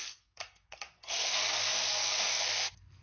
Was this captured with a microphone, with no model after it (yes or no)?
no